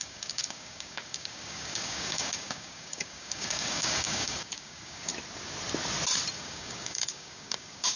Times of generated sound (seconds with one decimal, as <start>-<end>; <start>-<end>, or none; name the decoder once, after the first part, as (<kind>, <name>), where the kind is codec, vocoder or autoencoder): 0.0-5.1 (codec, DAC); 6.3-8.0